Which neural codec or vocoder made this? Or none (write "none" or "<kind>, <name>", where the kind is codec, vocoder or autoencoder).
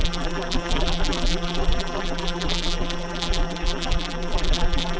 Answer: vocoder, BigVGAN v2